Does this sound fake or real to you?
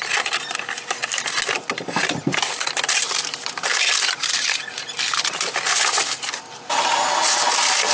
real